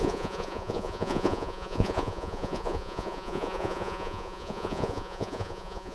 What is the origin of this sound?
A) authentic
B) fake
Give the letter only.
B